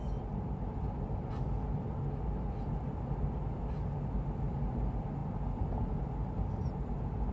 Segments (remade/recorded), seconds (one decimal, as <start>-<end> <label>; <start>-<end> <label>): 0.0-7.3 recorded